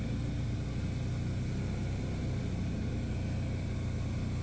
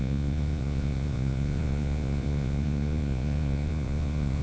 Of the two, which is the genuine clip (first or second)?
first